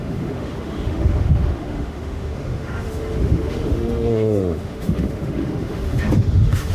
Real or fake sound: fake